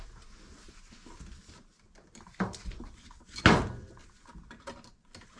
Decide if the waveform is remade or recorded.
recorded